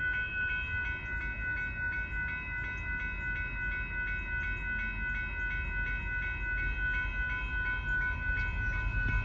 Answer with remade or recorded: recorded